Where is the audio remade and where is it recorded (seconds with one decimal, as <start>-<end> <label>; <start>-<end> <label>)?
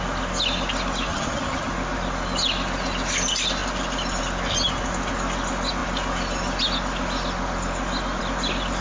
0.0-1.1 recorded; 1.1-1.7 remade; 1.7-8.8 recorded